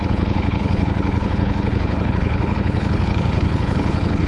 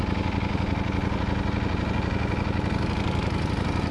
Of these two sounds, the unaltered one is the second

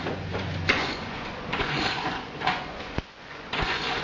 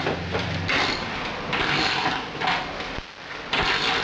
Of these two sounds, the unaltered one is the second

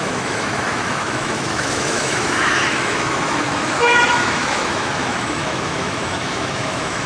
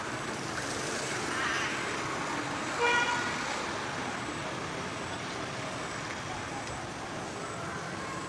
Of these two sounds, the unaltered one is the second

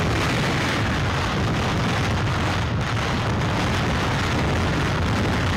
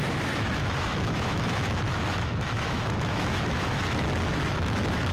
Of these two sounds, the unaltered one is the first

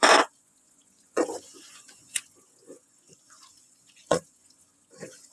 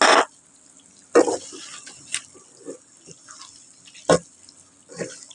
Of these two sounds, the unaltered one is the second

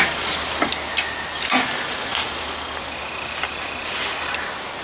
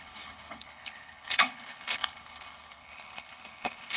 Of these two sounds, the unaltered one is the first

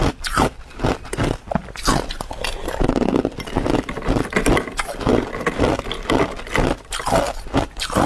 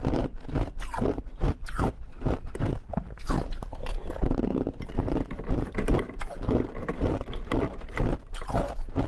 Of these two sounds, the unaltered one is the first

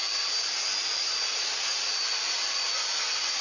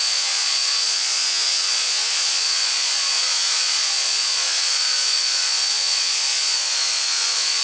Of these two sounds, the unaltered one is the first